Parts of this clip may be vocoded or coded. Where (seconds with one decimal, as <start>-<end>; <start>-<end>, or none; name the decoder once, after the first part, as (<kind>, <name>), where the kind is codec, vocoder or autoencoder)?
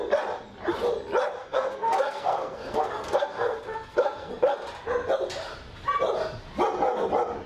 1.4-4.3 (codec, SNAC)